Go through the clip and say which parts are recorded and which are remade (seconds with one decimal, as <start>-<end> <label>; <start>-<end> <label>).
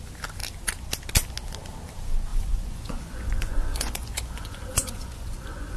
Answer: 0.0-2.3 recorded; 2.3-5.8 remade